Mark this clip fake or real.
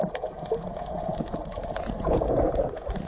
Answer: fake